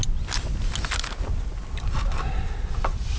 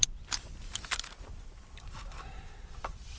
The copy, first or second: second